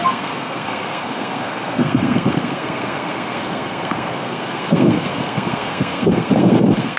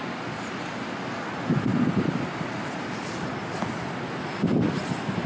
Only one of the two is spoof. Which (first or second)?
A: first